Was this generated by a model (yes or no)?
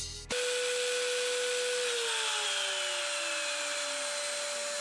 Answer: no